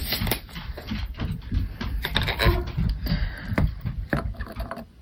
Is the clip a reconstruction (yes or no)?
yes